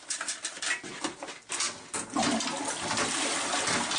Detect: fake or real real